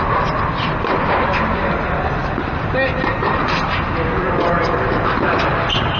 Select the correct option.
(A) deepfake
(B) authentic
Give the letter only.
B